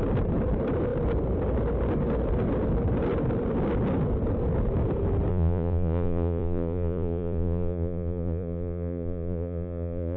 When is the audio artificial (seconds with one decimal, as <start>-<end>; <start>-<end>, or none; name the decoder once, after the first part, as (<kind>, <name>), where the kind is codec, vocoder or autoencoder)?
5.3-10.2 (vocoder, Vocos)